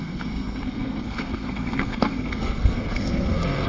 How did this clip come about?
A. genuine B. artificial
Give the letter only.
B